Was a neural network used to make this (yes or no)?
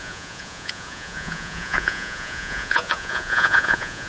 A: yes